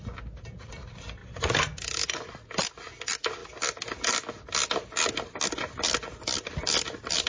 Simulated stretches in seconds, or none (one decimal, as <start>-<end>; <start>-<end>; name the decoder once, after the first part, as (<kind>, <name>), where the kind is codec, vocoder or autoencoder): none